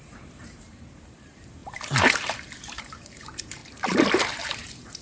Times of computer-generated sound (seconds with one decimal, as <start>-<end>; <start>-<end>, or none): 0.0-3.6; 4.4-5.0